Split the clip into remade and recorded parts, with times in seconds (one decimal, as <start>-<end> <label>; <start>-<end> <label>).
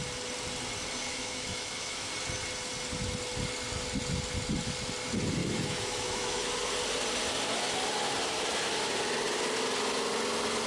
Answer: 0.0-1.1 recorded; 1.1-2.1 remade; 2.1-5.4 recorded; 5.4-6.5 remade; 6.5-10.7 recorded